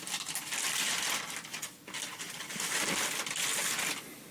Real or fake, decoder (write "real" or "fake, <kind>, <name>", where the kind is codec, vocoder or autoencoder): real